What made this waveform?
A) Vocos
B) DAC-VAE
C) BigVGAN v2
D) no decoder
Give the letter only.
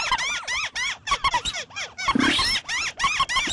D